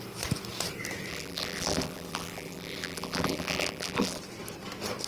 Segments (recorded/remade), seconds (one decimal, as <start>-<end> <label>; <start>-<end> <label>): 0.0-1.1 recorded; 1.1-4.2 remade; 4.2-5.1 recorded